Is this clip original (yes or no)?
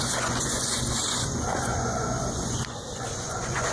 no